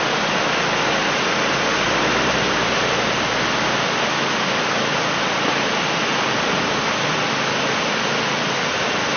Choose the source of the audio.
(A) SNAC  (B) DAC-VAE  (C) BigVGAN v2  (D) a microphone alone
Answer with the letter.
D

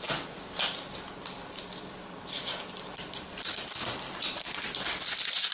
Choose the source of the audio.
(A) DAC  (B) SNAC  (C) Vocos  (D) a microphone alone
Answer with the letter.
D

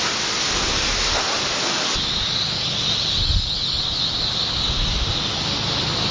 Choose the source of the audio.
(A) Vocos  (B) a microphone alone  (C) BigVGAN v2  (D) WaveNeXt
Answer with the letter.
B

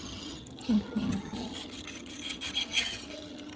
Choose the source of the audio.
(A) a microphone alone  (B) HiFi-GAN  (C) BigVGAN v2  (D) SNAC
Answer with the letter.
B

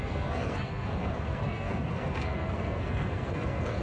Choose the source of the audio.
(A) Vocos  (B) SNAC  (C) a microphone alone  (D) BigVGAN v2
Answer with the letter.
B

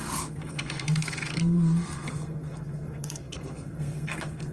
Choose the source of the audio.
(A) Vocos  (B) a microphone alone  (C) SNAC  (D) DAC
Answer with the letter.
C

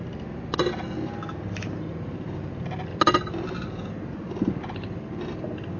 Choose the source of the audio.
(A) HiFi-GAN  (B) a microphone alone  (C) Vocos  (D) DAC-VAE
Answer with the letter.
B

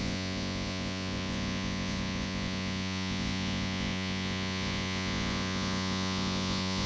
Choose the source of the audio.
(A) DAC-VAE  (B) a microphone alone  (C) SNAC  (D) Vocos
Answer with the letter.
D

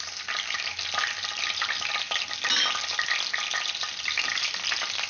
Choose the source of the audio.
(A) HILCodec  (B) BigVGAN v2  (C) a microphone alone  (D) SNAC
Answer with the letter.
C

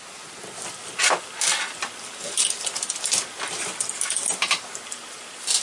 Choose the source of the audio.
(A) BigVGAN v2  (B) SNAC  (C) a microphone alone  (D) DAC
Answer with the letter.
C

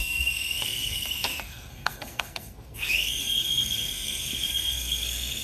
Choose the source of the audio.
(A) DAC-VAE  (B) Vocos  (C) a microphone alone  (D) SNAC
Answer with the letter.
D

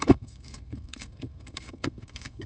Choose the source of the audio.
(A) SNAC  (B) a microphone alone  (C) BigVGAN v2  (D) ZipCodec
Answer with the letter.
A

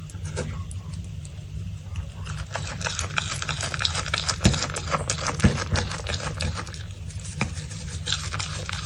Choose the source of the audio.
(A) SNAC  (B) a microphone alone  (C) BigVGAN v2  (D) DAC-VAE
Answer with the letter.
B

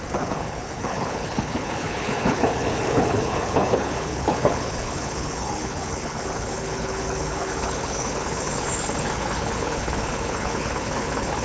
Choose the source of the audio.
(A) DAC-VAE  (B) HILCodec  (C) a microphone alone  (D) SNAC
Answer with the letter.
B